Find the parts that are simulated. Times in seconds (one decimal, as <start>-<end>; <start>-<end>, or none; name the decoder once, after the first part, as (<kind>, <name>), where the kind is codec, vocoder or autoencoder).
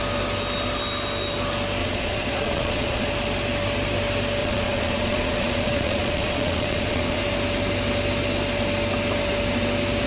1.8-3.1 (vocoder, Vocos); 4.4-7.2